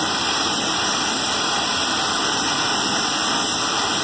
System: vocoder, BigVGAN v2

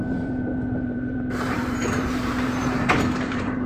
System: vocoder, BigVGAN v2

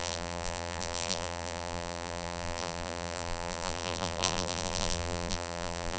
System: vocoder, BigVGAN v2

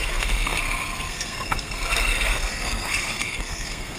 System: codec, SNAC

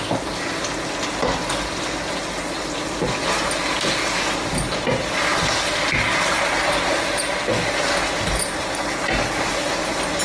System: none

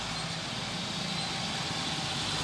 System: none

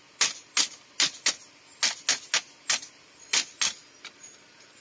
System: none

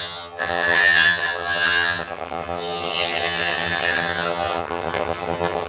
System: vocoder, HiFi-GAN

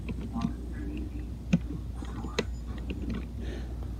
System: none